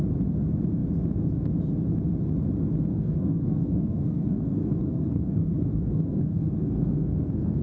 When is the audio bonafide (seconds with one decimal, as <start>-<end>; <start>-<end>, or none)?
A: 0.0-2.9